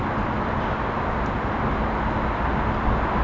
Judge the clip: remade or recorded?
recorded